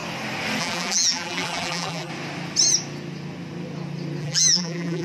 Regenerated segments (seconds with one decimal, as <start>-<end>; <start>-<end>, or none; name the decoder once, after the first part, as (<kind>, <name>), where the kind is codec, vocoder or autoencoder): 0.6-2.1 (vocoder, BigVGAN v2); 4.2-5.0